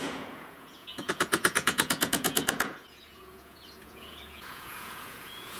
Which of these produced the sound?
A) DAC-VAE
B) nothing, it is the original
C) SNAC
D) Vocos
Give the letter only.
D